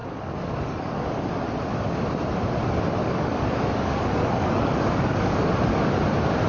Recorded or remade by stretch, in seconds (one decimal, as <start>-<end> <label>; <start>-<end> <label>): 0.0-1.5 remade; 1.5-3.0 recorded; 3.0-5.5 remade; 5.5-6.5 recorded